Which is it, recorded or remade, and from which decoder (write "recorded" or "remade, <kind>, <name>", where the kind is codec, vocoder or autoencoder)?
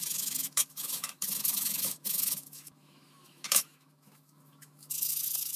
remade, autoencoder, DAC-VAE